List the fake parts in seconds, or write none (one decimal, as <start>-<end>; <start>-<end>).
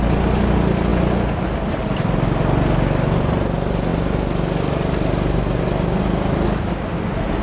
none